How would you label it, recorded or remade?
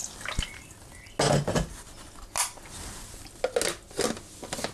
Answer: recorded